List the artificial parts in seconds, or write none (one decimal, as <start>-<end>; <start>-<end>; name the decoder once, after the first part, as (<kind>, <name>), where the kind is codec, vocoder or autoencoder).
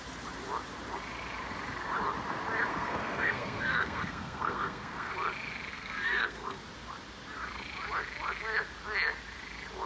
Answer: 2.7-5.1 (codec, SNAC); 5.7-6.6